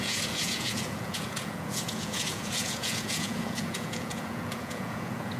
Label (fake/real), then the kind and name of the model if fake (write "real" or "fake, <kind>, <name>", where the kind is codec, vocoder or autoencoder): fake, vocoder, Vocos